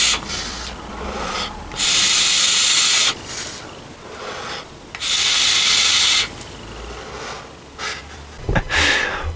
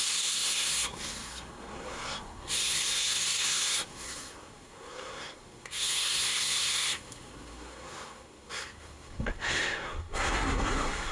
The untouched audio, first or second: first